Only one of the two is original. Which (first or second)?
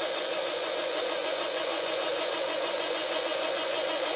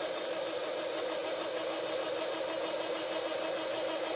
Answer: second